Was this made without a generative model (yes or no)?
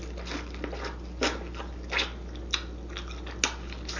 yes